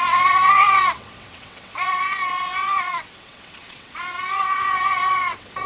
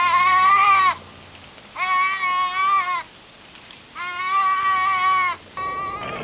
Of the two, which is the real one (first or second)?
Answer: second